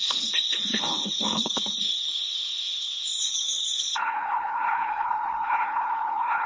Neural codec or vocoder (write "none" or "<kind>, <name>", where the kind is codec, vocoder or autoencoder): codec, HILCodec